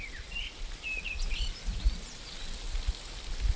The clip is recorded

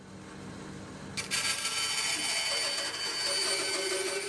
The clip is recorded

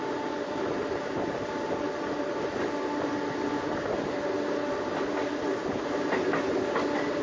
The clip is recorded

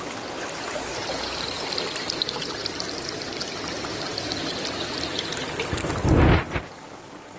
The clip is recorded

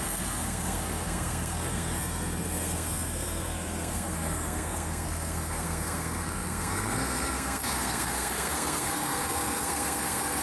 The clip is remade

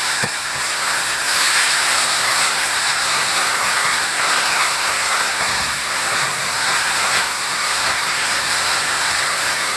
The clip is remade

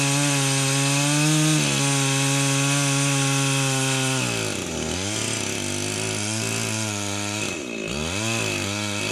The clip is recorded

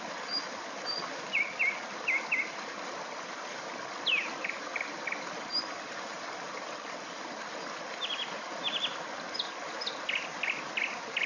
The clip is recorded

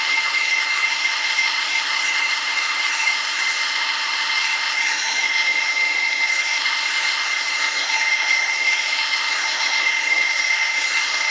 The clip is remade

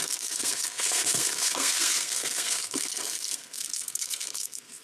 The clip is remade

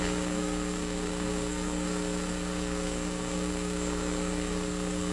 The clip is remade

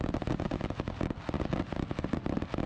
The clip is recorded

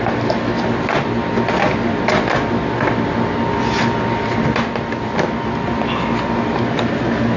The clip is recorded